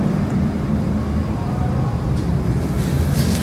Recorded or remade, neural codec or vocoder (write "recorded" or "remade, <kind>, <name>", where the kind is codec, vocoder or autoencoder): recorded